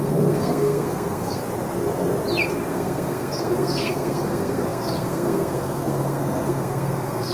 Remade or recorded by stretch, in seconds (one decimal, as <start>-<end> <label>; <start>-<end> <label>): 0.0-1.4 remade; 1.4-2.7 recorded; 2.7-7.3 remade